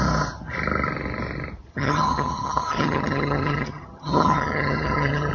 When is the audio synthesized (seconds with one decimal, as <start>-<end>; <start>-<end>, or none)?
1.7-5.3